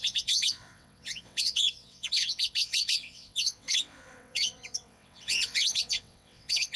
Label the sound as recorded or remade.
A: remade